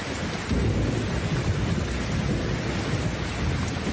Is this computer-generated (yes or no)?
no